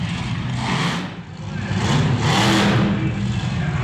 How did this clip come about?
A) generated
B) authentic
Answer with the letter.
B